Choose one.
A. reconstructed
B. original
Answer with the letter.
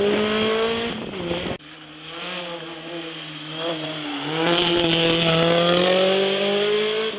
B